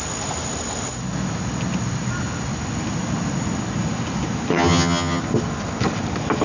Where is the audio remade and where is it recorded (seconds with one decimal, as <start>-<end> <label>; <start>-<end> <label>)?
0.0-4.5 recorded; 4.5-5.2 remade; 5.2-6.4 recorded

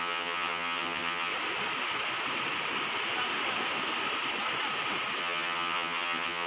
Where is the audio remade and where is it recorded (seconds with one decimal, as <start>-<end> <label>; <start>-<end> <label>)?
0.0-1.3 remade; 1.3-5.2 recorded; 5.2-6.5 remade

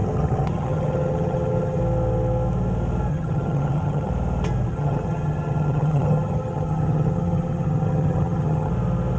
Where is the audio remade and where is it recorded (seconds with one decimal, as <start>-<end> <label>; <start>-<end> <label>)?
0.0-1.8 remade; 1.8-3.1 recorded; 3.1-4.1 remade; 4.1-4.7 recorded; 4.7-8.7 remade; 8.7-9.2 recorded

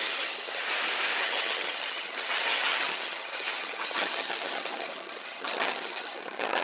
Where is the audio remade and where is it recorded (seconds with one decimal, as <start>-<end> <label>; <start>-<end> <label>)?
0.0-0.6 remade; 0.6-1.2 recorded; 1.2-6.6 remade

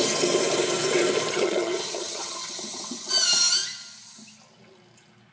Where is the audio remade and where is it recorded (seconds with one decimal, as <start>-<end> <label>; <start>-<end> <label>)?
0.0-1.3 recorded; 1.3-3.1 remade; 3.1-5.3 recorded